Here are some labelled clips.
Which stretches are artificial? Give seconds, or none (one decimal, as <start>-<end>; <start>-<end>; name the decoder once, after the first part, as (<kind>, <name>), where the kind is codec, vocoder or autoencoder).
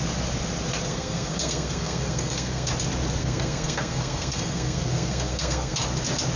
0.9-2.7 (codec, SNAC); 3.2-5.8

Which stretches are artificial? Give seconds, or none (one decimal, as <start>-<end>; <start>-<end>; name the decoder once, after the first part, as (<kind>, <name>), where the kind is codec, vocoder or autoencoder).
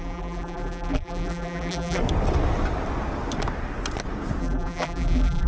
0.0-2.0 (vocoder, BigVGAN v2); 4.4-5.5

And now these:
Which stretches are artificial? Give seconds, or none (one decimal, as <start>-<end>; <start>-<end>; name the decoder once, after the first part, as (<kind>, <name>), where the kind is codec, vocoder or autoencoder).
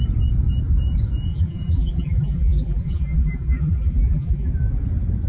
1.3-4.5 (vocoder, BigVGAN v2)